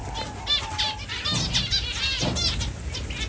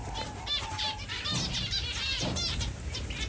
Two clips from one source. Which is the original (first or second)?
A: first